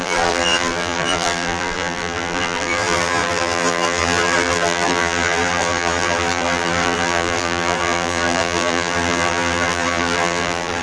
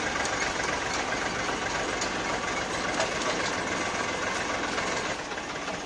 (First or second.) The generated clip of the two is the first